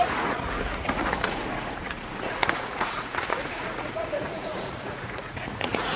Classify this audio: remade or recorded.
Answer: remade